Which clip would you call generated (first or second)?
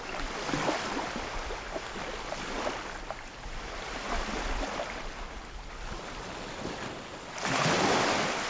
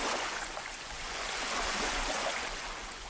second